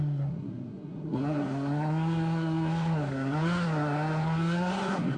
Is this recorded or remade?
remade